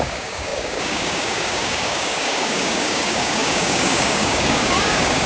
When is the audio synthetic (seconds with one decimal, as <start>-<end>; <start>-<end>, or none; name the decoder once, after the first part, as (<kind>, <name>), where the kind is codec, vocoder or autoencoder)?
0.0-5.3 (codec, DAC)